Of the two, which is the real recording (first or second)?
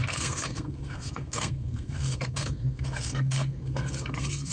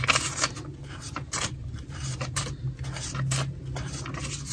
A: second